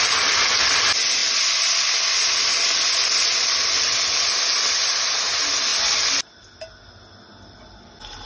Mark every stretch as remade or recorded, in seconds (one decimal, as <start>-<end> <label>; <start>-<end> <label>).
0.0-8.3 recorded